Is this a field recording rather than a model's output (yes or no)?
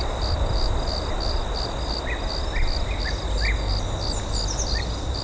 yes